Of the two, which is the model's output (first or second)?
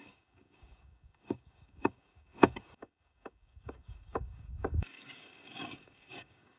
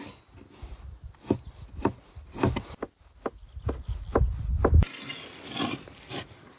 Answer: first